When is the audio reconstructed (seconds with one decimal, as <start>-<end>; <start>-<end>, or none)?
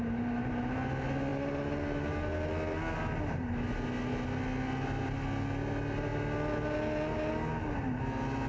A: none